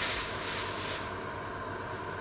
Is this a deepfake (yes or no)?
no